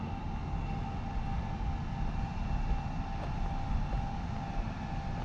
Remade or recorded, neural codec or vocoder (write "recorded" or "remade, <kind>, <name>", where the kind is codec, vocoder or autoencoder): recorded